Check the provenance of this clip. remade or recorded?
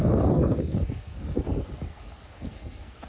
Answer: remade